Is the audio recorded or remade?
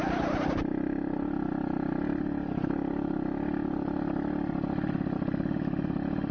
recorded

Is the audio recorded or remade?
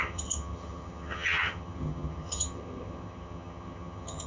remade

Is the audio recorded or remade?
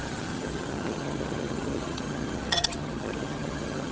remade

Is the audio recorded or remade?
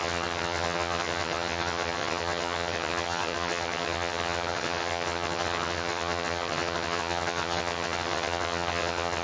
remade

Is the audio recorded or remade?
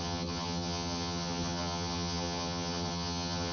remade